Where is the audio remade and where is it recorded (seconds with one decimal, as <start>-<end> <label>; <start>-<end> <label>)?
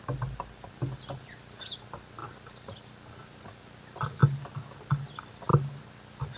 0.0-6.4 recorded